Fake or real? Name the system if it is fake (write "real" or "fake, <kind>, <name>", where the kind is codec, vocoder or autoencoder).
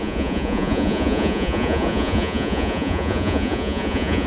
fake, vocoder, Vocos